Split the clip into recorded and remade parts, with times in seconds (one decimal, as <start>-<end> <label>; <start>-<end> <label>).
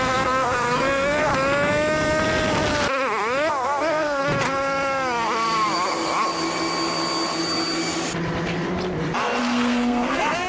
0.0-1.3 remade; 1.3-3.5 recorded; 3.5-4.2 remade; 4.2-9.4 recorded; 9.4-10.5 remade